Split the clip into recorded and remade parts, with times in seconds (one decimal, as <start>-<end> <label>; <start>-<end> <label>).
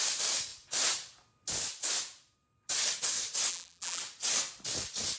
0.0-3.5 recorded; 3.5-4.0 remade; 4.0-5.2 recorded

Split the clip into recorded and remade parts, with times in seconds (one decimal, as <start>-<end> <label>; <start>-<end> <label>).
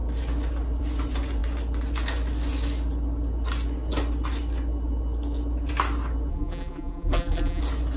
0.0-6.3 recorded; 6.3-7.6 remade; 7.6-8.0 recorded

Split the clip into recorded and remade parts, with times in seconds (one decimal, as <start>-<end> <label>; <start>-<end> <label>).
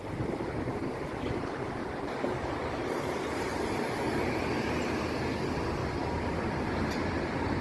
0.0-1.4 remade; 1.4-7.6 recorded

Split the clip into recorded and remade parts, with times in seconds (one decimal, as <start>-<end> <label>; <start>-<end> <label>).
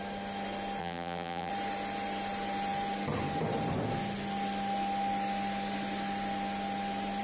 0.0-0.8 recorded; 0.8-1.5 remade; 1.5-7.2 recorded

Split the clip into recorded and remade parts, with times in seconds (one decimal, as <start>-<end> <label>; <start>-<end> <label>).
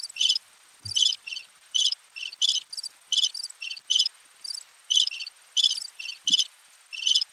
0.0-7.3 recorded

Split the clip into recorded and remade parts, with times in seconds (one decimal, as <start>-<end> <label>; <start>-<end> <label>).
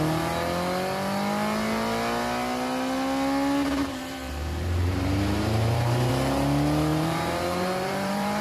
0.0-3.8 recorded; 3.8-6.1 remade; 6.1-6.9 recorded; 6.9-8.4 remade